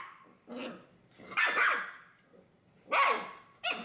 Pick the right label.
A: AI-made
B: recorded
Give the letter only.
B